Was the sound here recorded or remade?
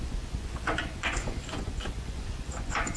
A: remade